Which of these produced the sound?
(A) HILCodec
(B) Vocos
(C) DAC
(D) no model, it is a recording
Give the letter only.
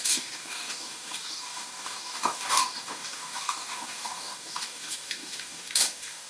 C